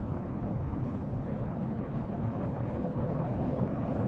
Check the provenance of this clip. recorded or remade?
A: remade